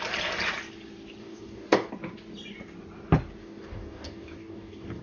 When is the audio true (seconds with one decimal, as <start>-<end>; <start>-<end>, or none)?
0.0-1.2; 1.9-3.4